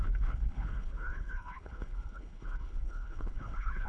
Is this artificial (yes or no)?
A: yes